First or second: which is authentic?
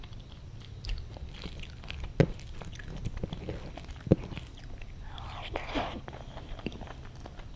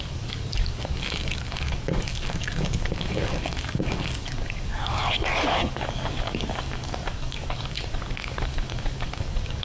first